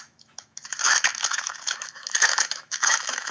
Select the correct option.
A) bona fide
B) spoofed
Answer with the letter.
B